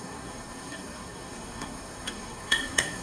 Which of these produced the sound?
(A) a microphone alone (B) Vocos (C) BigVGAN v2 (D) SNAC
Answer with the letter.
D